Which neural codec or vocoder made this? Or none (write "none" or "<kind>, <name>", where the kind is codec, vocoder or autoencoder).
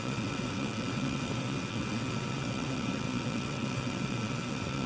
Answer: vocoder, WaveNeXt